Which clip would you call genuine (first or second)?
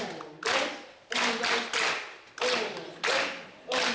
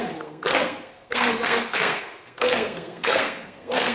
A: first